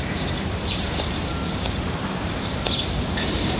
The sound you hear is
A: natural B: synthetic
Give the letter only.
B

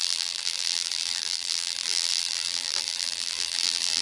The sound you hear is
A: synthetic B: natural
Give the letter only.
A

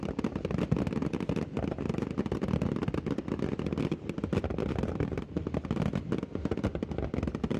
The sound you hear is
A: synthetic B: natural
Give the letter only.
B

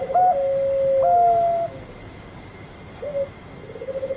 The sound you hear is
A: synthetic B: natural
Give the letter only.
B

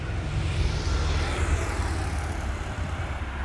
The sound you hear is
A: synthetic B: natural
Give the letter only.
A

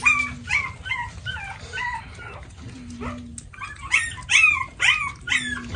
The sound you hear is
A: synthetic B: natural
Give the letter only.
B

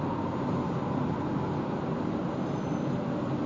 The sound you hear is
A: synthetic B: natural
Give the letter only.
B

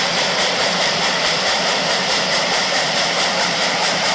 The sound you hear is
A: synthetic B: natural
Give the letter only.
A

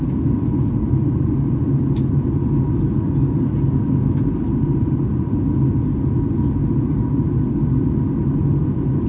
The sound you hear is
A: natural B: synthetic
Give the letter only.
A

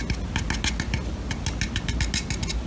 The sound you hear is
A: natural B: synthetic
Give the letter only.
A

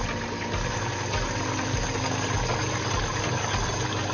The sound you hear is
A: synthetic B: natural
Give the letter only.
B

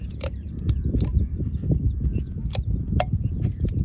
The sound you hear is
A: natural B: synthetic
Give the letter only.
B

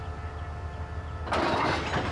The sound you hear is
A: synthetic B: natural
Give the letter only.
B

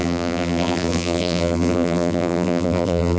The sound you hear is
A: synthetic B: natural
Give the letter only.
A